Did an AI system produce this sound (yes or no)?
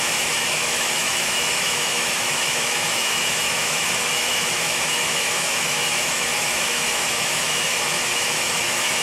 yes